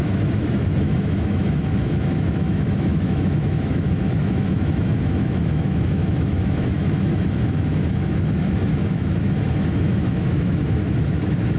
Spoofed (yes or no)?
yes